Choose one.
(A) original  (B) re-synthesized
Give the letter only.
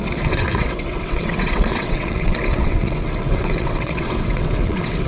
B